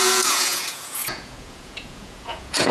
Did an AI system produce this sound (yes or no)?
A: yes